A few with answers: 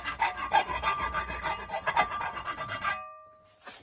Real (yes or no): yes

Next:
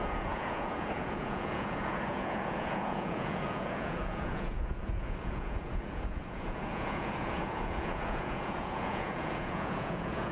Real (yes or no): no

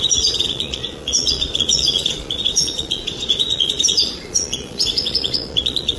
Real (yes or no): no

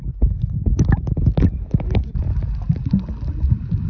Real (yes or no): yes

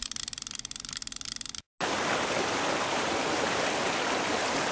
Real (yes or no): yes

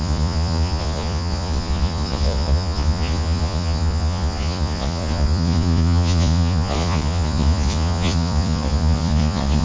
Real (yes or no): no